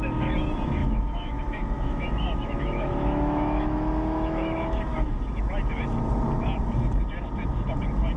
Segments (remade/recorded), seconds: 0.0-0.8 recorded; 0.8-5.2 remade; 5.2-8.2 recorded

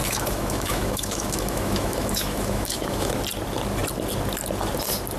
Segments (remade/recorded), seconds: 0.0-3.1 remade; 3.1-5.2 recorded

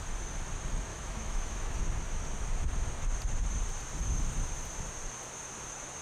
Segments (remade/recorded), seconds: 0.0-0.9 recorded; 0.9-1.8 remade; 1.8-6.0 recorded

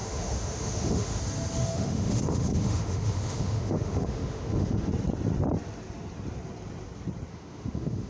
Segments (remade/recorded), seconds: 0.0-1.2 remade; 1.2-1.6 recorded; 1.6-4.9 remade; 4.9-7.3 recorded; 7.3-8.1 remade

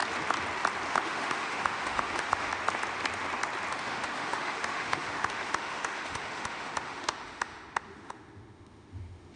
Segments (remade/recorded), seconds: 0.0-0.9 recorded; 0.9-2.5 remade; 2.5-3.7 recorded; 3.7-9.4 remade